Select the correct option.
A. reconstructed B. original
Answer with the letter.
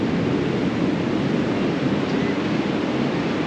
B